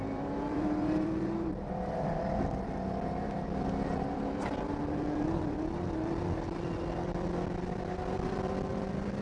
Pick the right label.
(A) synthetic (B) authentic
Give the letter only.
A